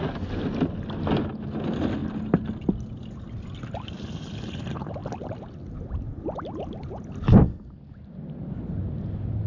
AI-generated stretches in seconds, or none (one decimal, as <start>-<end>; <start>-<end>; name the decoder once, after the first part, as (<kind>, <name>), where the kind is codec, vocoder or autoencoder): none